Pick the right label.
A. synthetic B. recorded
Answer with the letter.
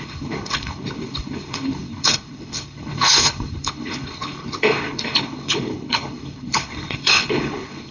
A